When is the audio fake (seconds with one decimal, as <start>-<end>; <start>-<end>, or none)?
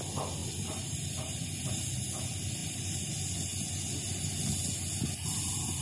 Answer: 0.4-1.7; 2.6-3.1